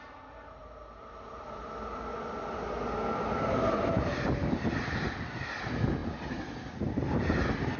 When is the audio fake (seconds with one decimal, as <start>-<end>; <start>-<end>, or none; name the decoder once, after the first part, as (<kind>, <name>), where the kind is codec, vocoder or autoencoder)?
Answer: none